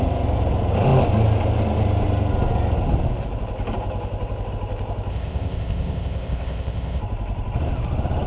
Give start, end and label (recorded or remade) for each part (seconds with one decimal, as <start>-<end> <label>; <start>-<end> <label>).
0.0-5.1 recorded; 5.1-7.0 remade; 7.0-8.3 recorded